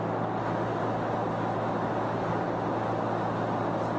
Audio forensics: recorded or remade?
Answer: recorded